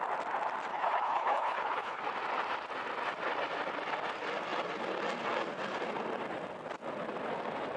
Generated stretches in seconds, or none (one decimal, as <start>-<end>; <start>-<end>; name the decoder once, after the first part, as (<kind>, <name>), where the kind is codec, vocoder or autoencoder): 0.7-2.0 (codec, HILCodec)